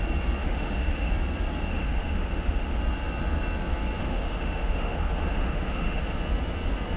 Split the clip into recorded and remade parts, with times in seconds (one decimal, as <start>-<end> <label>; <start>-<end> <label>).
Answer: 0.0-0.4 recorded; 0.4-1.1 remade; 1.1-1.7 recorded; 1.7-2.8 remade; 2.8-4.0 recorded; 4.0-6.2 remade; 6.2-7.0 recorded